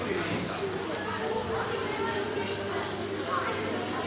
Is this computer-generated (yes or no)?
no